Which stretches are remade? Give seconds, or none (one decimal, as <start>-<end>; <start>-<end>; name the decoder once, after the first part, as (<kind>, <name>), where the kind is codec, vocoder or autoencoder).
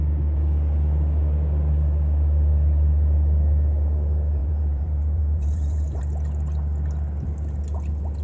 4.4-6.0 (vocoder, BigVGAN v2)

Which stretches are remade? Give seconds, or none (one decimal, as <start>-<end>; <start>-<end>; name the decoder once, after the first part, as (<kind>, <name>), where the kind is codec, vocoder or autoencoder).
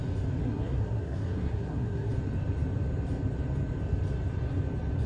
0.4-2.1 (codec, SNAC)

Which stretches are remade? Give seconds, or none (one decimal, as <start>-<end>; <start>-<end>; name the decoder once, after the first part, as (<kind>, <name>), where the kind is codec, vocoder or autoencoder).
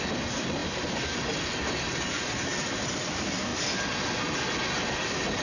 none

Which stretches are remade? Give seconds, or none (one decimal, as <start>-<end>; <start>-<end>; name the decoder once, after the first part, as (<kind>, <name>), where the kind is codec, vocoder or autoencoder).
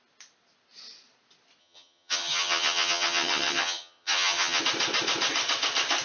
1.6-4.6 (vocoder, HiFi-GAN)